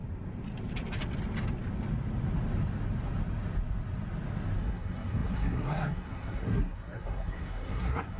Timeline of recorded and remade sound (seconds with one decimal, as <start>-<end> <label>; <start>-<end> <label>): 0.0-4.6 recorded; 4.6-8.2 remade